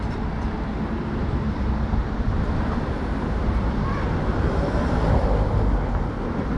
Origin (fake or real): real